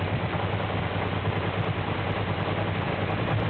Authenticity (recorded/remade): recorded